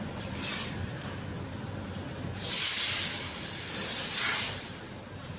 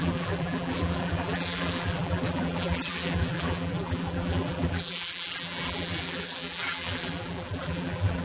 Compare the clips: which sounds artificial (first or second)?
second